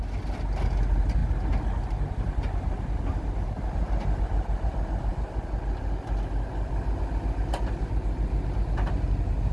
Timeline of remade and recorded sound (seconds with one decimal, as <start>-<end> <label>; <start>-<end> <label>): 0.0-9.5 recorded